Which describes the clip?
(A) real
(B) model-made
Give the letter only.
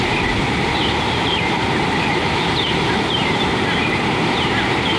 B